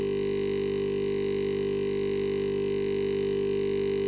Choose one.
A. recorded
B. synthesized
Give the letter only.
A